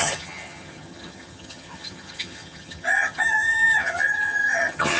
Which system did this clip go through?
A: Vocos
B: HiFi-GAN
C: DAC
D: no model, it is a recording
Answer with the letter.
B